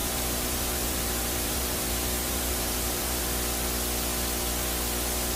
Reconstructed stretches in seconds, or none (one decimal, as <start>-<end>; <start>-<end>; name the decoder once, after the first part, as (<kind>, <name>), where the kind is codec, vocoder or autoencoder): 0.0-3.2 (vocoder, BigVGAN v2)